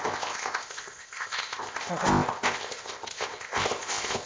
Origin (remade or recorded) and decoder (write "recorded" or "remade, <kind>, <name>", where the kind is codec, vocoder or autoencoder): remade, codec, ZipCodec